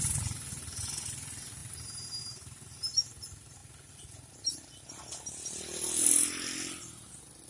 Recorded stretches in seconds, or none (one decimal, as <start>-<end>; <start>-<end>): 0.0-7.5